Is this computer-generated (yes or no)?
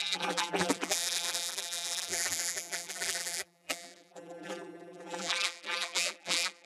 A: yes